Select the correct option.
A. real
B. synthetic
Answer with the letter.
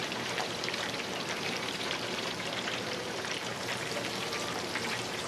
B